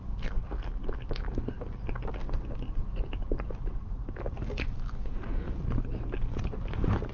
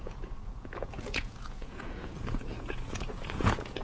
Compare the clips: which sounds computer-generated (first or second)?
second